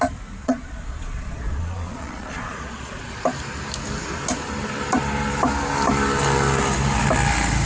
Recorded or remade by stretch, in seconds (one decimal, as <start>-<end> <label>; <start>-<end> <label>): 0.0-0.4 recorded; 0.4-3.1 remade; 3.1-7.7 recorded

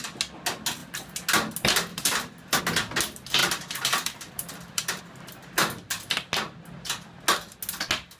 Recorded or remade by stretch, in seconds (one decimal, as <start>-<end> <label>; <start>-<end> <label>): 0.0-1.9 recorded; 1.9-2.6 remade; 2.6-3.4 recorded; 3.4-5.0 remade; 5.0-8.2 recorded

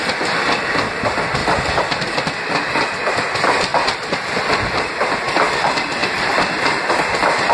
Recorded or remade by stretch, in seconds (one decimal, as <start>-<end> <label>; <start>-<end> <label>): 0.0-3.7 recorded; 3.7-5.0 remade; 5.0-6.0 recorded; 6.0-6.9 remade; 6.9-7.5 recorded

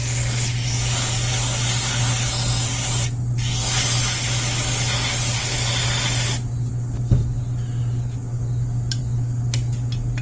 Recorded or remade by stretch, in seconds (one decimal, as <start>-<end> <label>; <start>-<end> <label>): 0.0-10.2 recorded

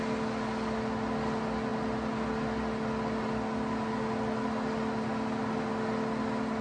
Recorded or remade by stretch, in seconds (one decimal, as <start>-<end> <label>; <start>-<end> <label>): 0.0-6.6 recorded

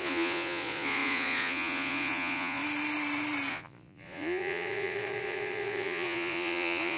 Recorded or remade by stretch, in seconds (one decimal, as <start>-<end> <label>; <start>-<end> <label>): 0.0-2.6 remade; 2.6-3.5 recorded; 3.5-7.0 remade

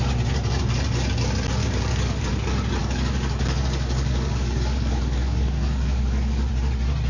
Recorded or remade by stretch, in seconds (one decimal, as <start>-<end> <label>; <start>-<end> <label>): 0.0-1.6 recorded; 1.6-2.3 remade; 2.3-2.8 recorded; 2.8-6.5 remade; 6.5-7.1 recorded